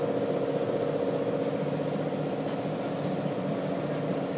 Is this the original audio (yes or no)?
yes